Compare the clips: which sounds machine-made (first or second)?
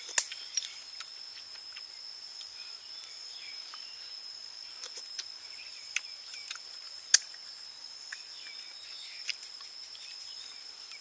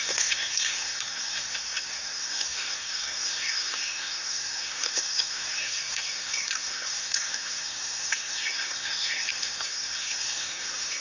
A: second